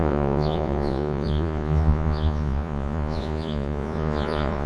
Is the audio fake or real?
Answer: fake